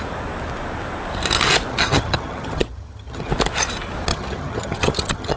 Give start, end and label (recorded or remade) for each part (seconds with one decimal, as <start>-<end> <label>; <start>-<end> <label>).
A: 0.0-1.7 recorded; 1.7-3.3 remade; 3.3-4.1 recorded; 4.1-5.4 remade